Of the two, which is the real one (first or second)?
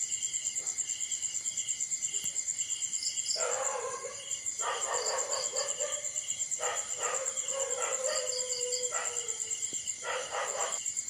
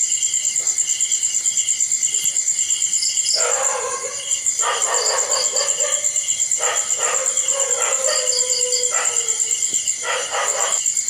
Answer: second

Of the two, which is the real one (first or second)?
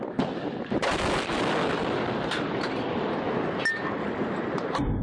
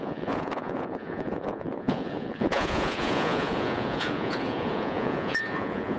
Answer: first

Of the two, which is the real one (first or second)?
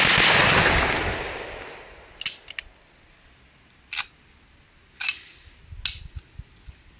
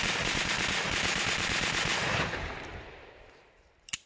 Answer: first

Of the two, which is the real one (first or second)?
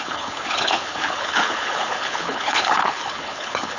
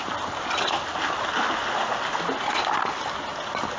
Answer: second